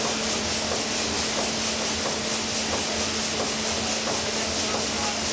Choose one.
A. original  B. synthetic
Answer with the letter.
A